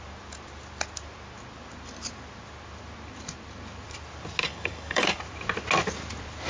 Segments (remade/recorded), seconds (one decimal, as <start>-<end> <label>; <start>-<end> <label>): 0.0-4.4 recorded; 4.4-5.2 remade; 5.2-6.5 recorded